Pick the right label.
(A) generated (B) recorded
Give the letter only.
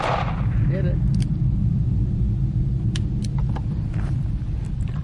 B